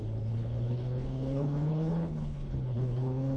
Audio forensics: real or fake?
fake